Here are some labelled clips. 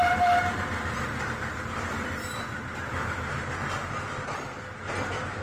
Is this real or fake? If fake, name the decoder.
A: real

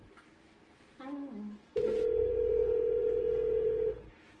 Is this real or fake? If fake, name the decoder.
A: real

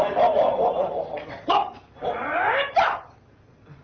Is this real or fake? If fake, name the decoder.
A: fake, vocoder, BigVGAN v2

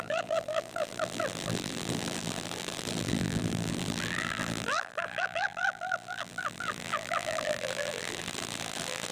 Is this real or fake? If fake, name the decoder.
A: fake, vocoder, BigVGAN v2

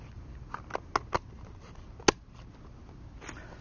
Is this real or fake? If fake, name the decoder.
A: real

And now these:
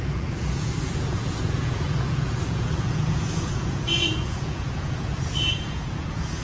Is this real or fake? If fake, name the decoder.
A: fake, vocoder, Vocos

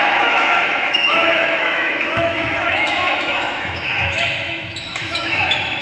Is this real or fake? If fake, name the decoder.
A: fake, autoencoder, DAC-VAE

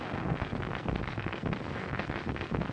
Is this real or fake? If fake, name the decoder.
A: fake, codec, SNAC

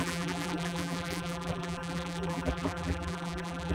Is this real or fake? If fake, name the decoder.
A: fake, vocoder, BigVGAN v2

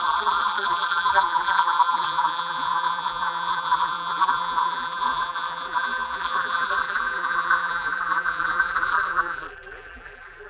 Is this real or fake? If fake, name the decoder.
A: fake, vocoder, BigVGAN v2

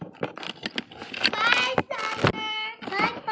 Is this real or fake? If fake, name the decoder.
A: real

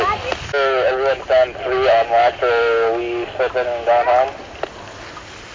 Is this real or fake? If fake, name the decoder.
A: real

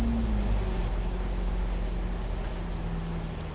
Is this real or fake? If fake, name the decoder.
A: real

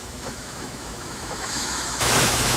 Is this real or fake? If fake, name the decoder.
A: fake, autoencoder, DAC-VAE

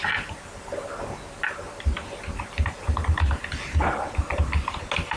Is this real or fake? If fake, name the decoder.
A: real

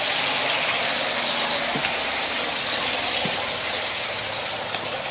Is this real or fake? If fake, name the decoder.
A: real